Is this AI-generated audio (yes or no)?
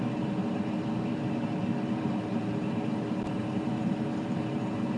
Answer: yes